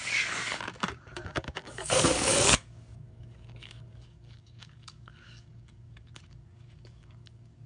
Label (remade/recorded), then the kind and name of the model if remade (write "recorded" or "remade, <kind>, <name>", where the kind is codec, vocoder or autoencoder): remade, codec, DAC